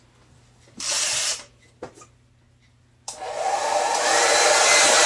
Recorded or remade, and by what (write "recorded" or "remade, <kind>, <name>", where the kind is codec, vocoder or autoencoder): recorded